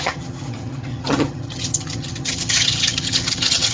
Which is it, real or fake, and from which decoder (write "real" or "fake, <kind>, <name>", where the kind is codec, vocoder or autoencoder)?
fake, vocoder, HiFi-GAN